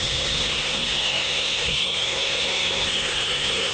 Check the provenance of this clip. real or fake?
fake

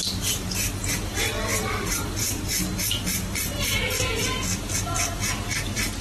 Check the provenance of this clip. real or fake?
real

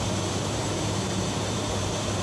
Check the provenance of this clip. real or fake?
fake